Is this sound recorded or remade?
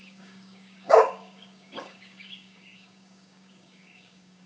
remade